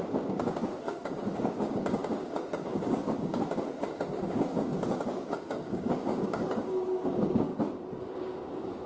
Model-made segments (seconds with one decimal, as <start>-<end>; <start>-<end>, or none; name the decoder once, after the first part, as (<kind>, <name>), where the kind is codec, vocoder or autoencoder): 0.0-7.5 (codec, DAC); 8.0-8.9